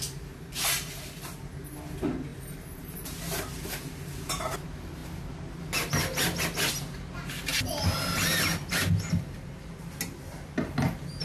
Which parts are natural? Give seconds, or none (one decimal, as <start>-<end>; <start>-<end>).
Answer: 0.0-2.3; 3.2-11.2